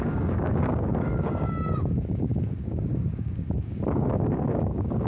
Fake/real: fake